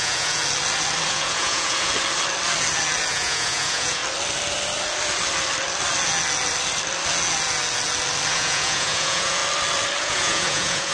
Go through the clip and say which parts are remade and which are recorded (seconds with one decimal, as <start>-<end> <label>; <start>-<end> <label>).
0.0-0.4 remade; 0.4-1.1 recorded; 1.1-1.9 remade; 1.9-3.1 recorded; 3.1-4.0 remade; 4.0-8.3 recorded; 8.3-9.4 remade; 9.4-10.0 recorded; 10.0-10.9 remade

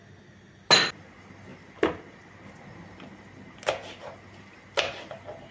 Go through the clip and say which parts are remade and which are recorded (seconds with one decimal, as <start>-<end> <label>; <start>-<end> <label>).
0.0-5.5 recorded

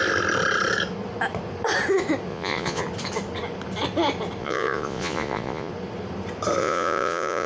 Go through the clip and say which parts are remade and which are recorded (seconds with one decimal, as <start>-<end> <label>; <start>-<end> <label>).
0.0-2.3 recorded; 2.3-2.8 remade; 2.8-4.4 recorded; 4.4-5.7 remade; 5.7-6.6 recorded; 6.6-7.5 remade

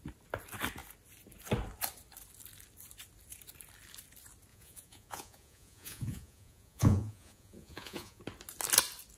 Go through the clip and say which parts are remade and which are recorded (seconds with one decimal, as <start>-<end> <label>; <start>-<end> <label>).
0.0-4.5 recorded; 4.5-8.2 remade; 8.2-9.2 recorded

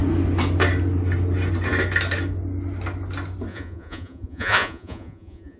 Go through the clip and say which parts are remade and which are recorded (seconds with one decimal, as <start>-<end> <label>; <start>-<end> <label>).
0.0-3.5 recorded; 3.5-5.6 remade

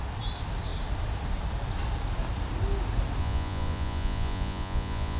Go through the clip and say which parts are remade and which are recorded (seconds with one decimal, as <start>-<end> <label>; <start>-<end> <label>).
0.0-3.2 recorded; 3.2-5.2 remade

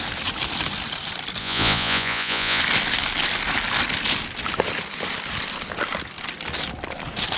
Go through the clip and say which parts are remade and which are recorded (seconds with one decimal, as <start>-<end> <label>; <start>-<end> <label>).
0.0-1.4 recorded; 1.4-2.6 remade; 2.6-7.4 recorded